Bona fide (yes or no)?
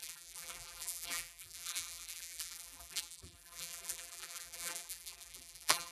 no